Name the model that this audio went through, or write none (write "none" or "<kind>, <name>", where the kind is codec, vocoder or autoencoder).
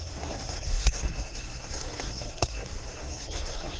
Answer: codec, SNAC